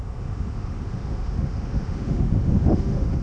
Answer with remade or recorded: remade